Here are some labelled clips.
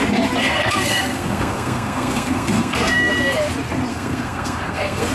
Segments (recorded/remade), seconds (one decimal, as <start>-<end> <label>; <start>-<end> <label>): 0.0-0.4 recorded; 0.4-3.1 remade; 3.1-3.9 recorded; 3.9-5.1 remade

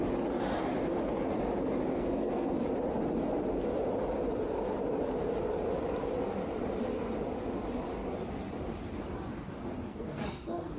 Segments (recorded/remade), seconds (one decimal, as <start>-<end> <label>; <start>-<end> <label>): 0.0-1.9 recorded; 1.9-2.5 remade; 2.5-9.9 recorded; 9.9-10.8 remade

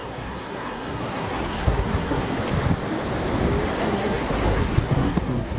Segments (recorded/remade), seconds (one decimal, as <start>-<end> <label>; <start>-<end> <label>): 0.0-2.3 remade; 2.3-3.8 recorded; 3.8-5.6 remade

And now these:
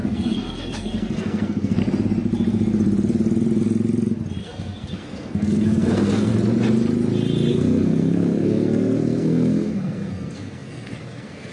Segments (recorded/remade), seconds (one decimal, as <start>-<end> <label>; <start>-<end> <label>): 0.0-1.8 remade; 1.8-4.4 recorded; 4.4-6.3 remade; 6.3-7.5 recorded; 7.5-11.5 remade

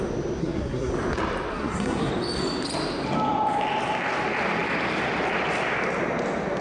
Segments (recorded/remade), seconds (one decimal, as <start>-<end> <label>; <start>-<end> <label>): 0.0-0.4 recorded; 0.4-0.9 remade; 0.9-1.5 recorded; 1.5-2.1 remade; 2.1-6.6 recorded

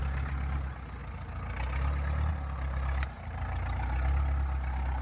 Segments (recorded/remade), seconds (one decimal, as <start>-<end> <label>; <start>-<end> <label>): 0.0-5.0 recorded

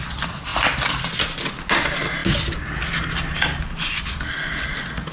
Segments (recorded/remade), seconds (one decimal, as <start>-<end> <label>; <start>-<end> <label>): 0.0-5.1 recorded